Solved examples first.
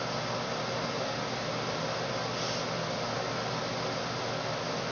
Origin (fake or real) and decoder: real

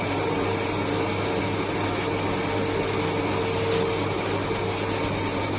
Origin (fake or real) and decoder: real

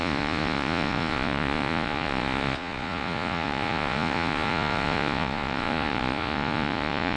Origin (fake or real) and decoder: fake, vocoder, Vocos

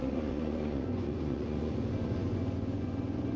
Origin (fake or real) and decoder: fake, vocoder, Vocos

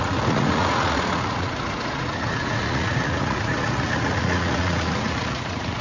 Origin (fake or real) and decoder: fake, vocoder, Vocos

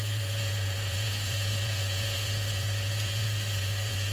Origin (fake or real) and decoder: fake, vocoder, Vocos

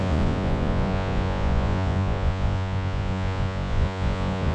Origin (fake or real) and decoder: fake, vocoder, Vocos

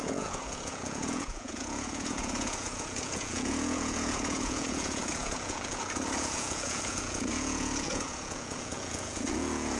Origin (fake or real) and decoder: fake, vocoder, Vocos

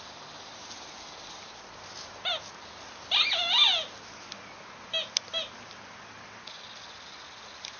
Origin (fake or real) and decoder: real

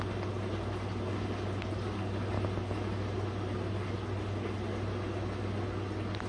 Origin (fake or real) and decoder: real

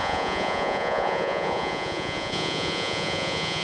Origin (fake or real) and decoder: fake, vocoder, Vocos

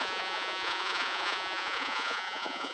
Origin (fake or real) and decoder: fake, vocoder, Vocos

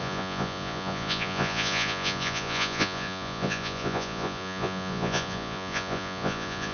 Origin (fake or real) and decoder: fake, vocoder, Vocos